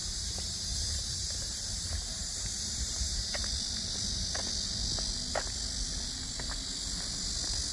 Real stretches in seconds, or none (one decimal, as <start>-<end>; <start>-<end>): 3.4-7.7